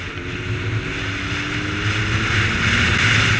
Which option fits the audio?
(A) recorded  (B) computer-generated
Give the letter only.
A